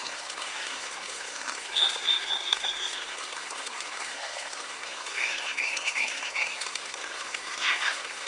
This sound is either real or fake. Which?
fake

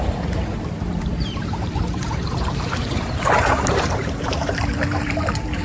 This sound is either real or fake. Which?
fake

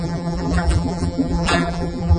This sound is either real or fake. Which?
fake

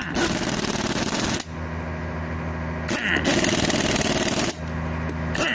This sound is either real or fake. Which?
real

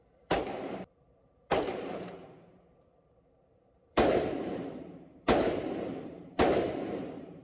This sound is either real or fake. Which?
fake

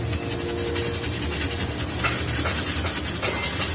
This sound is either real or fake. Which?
real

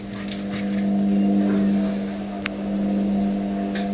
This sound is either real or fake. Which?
real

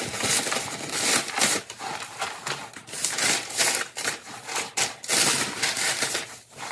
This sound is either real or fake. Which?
fake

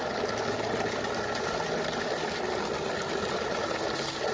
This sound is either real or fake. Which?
real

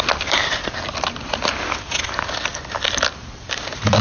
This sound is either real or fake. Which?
fake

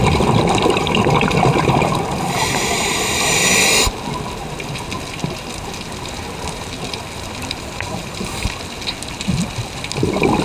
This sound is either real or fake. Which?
real